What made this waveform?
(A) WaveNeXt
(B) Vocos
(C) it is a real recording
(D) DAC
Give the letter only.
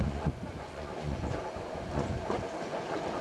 B